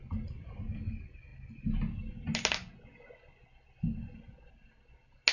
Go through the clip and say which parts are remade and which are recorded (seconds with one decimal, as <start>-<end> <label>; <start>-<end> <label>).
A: 0.0-5.3 recorded